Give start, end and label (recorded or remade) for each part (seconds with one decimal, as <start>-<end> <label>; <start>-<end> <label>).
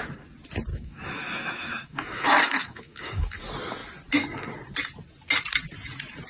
0.0-0.7 recorded; 0.7-3.4 remade; 3.4-6.3 recorded